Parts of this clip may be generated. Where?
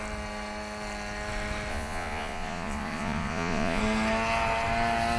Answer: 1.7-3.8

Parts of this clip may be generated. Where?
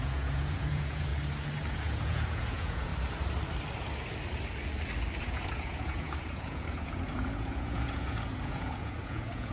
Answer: 0.0-1.1; 1.7-2.9; 5.2-9.5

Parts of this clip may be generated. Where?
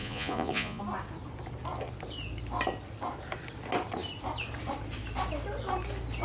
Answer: 0.0-0.8